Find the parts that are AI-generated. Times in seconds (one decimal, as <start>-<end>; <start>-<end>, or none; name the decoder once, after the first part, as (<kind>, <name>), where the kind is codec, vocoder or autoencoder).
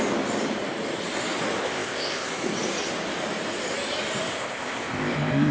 1.6-2.3 (codec, ZipCodec); 4.3-5.5